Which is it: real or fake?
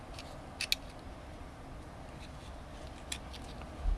real